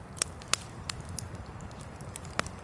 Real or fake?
fake